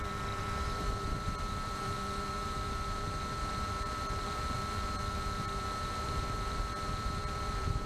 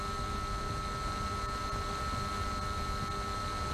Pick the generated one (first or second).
first